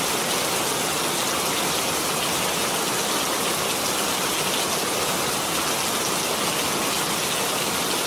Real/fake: real